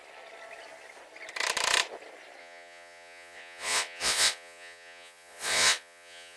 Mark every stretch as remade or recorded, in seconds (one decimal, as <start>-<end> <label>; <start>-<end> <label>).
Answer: 0.0-2.4 recorded; 2.4-6.4 remade